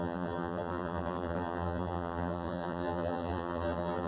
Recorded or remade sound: remade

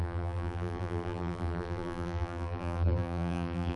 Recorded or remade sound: remade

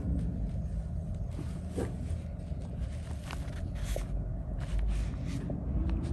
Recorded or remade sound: recorded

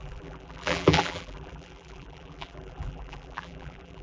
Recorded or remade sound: remade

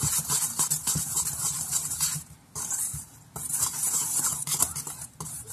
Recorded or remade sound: remade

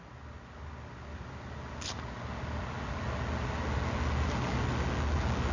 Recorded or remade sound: recorded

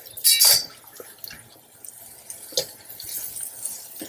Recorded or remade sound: recorded